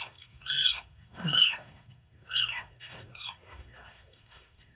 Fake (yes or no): yes